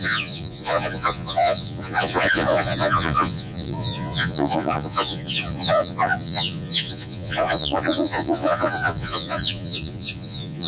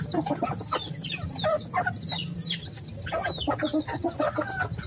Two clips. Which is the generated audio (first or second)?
first